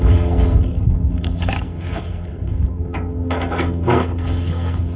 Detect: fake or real fake